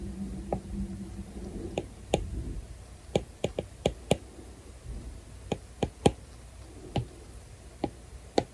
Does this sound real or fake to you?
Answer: real